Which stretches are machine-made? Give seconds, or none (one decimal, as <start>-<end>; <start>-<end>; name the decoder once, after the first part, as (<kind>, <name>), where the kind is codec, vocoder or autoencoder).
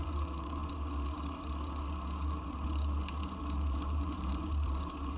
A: 0.0-0.6 (vocoder, BigVGAN v2); 3.4-5.2